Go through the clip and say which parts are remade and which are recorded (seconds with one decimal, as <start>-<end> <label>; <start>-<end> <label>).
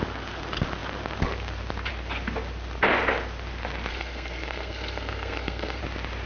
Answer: 0.0-3.9 recorded; 3.9-5.8 remade; 5.8-6.3 recorded